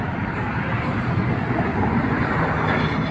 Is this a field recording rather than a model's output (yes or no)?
yes